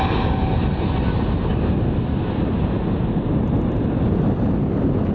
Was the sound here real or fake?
real